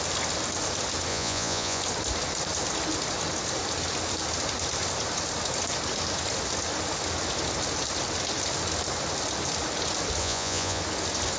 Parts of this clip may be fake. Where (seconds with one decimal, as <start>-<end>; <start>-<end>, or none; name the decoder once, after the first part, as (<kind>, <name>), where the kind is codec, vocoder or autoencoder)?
1.1-1.8 (vocoder, Vocos); 10.2-10.8

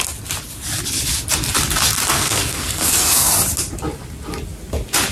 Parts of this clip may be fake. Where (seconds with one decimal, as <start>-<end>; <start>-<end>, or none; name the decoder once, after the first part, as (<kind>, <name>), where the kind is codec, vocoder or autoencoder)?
2.1-3.3 (codec, SNAC)

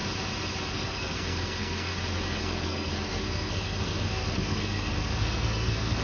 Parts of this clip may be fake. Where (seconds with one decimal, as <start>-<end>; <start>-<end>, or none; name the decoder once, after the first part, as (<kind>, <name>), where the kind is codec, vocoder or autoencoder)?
0.7-1.9 (codec, SNAC); 2.4-6.0